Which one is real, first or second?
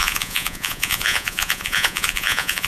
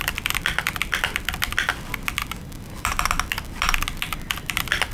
second